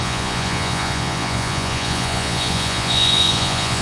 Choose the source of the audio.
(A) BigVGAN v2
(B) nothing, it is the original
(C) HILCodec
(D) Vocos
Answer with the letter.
D